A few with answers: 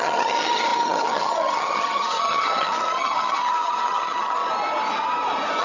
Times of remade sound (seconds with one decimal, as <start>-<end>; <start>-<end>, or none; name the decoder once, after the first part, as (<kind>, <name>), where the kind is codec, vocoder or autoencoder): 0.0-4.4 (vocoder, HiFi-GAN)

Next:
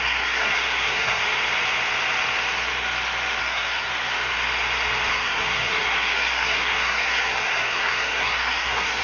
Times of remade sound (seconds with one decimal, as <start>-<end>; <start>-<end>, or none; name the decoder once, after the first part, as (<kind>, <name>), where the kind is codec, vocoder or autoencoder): 0.0-1.2 (codec, SNAC); 3.4-3.9; 5.1-9.0

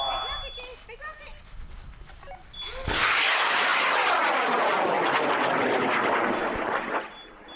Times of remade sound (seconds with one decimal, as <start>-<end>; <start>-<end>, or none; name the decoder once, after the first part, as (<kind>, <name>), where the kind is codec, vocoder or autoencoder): none

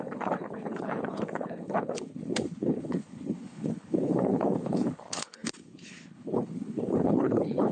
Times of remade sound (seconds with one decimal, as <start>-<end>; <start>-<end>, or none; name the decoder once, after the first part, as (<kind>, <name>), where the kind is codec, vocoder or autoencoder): 0.0-7.7 (codec, HILCodec)